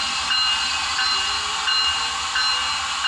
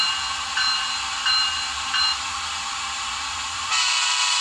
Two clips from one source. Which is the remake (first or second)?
second